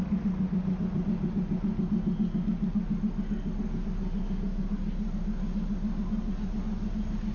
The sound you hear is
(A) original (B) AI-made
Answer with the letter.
A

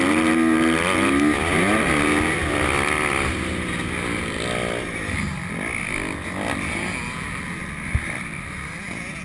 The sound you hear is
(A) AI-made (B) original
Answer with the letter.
B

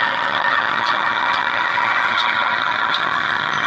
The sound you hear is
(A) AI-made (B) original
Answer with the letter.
A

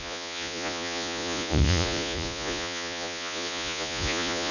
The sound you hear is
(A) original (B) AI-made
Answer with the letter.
B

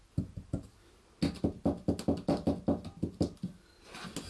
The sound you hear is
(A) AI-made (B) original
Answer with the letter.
B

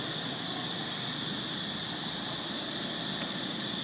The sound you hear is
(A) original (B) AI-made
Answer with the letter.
A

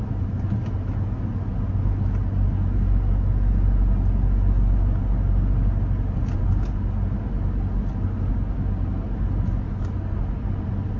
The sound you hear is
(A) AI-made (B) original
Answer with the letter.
B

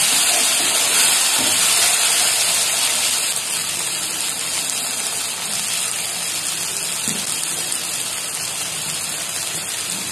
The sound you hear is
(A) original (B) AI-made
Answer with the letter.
A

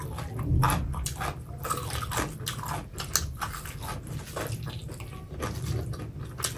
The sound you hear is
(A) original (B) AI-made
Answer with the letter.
A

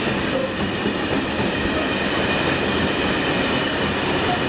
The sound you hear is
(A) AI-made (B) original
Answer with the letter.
B